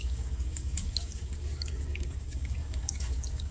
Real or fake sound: fake